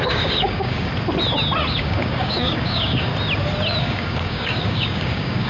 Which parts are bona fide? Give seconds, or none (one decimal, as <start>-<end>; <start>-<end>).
0.9-1.7; 3.1-3.8